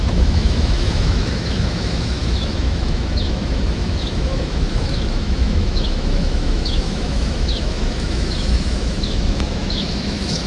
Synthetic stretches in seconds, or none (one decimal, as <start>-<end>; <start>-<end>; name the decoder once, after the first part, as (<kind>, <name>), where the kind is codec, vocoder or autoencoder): 0.0-10.5 (autoencoder, DAC-VAE)